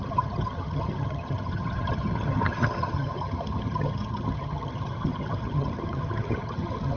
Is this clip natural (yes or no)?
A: no